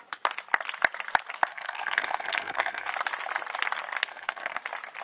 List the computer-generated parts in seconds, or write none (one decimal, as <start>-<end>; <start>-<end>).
1.5-2.9; 4.1-4.6